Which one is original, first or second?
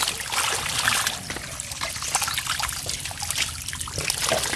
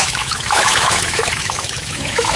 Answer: first